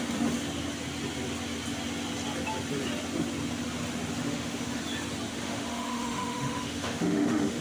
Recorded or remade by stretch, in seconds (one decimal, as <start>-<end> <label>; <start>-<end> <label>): 0.0-4.2 recorded; 4.2-4.8 remade; 4.8-5.3 recorded; 5.3-7.6 remade